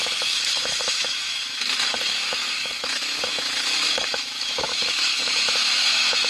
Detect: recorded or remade remade